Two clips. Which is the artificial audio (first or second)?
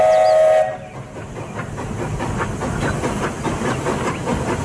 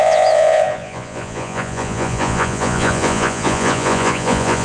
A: second